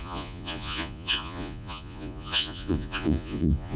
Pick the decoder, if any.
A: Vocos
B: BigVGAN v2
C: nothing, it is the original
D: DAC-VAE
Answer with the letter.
A